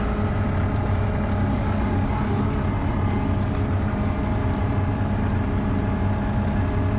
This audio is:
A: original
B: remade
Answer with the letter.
A